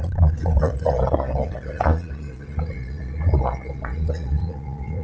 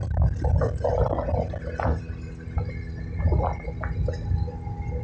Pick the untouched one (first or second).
second